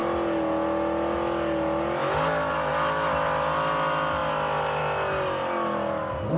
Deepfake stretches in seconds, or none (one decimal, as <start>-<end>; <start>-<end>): none